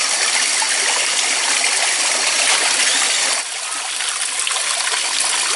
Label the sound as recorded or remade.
recorded